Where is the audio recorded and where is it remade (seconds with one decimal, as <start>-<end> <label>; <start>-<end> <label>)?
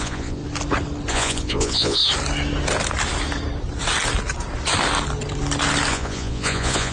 0.0-0.4 remade; 0.4-1.1 recorded; 1.1-2.0 remade; 2.0-5.9 recorded; 5.9-6.9 remade